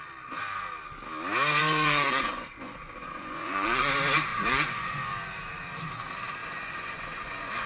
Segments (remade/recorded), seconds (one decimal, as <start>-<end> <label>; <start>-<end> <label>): 0.0-1.6 recorded; 1.6-3.9 remade; 3.9-4.3 recorded; 4.3-5.1 remade; 5.1-6.4 recorded; 6.4-7.7 remade